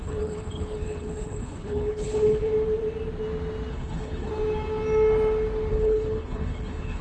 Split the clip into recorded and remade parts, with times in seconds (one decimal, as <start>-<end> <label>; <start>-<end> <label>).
0.0-2.5 remade; 2.5-3.7 recorded; 3.7-4.3 remade; 4.3-5.7 recorded; 5.7-7.0 remade